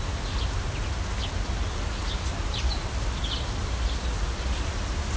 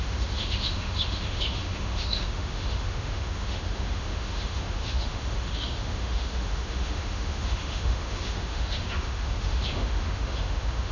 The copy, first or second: second